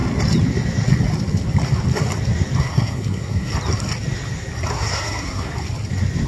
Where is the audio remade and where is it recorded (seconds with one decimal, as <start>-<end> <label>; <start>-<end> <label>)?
0.0-2.6 recorded; 2.6-3.5 remade; 3.5-4.7 recorded; 4.7-5.5 remade; 5.5-6.3 recorded